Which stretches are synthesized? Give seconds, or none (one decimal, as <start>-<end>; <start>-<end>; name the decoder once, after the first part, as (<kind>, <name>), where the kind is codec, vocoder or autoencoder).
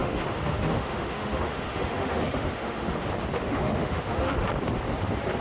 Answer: 0.0-2.9 (autoencoder, DAC-VAE); 3.4-4.5